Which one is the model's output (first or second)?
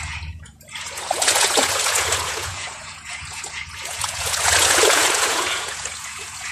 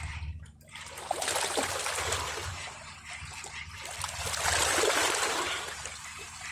first